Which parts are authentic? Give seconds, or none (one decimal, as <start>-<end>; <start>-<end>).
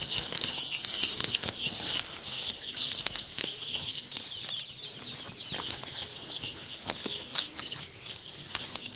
4.2-5.6